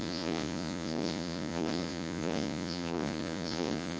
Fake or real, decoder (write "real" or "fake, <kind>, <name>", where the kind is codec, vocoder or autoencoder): fake, vocoder, Vocos